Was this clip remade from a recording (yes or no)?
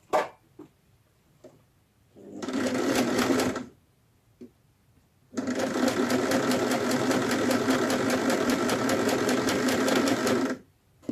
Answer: no